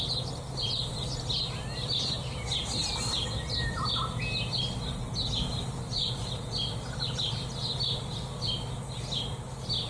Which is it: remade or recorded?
recorded